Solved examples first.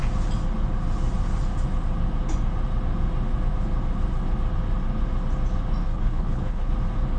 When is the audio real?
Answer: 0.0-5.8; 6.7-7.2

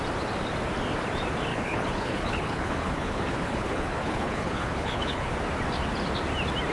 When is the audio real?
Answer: 0.0-1.5; 5.3-6.7

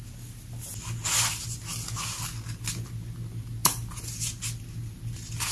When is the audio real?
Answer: 0.0-5.5

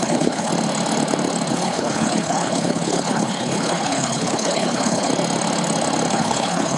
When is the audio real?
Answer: 0.5-1.5; 5.1-6.1

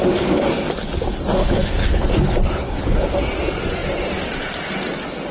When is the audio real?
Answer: 0.0-1.4; 3.1-5.3

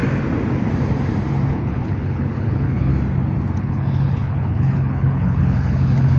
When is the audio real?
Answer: 0.0-1.5; 2.9-3.6

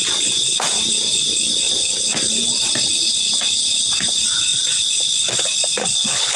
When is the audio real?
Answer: 0.0-5.8

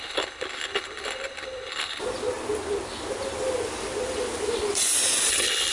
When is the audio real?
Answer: 2.0-5.3